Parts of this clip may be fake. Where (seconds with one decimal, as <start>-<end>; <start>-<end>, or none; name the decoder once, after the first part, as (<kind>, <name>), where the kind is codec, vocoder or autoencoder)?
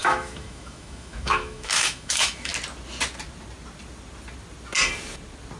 0.0-2.5 (autoencoder, DAC-VAE)